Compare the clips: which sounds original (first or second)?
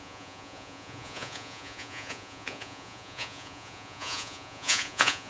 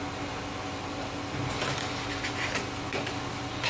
second